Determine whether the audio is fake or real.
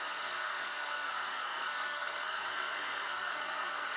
fake